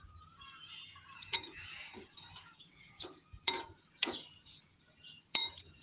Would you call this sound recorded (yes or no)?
no